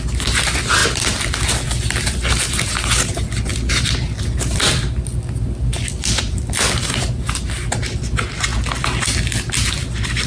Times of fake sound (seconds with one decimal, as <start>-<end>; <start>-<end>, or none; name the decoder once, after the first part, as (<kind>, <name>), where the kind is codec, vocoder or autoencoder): 5.7-6.4 (vocoder, BigVGAN v2)